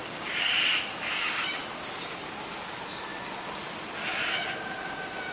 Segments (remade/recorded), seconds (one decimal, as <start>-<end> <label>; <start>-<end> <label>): 0.0-0.6 remade; 0.6-5.3 recorded